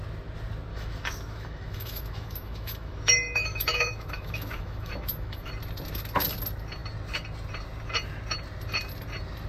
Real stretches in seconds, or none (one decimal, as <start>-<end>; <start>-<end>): 0.0-0.7; 5.5-9.5